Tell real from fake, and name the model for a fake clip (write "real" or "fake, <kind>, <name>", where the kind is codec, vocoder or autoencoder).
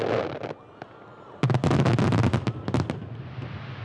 real